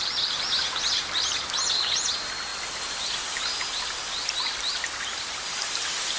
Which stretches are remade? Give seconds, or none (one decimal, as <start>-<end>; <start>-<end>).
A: none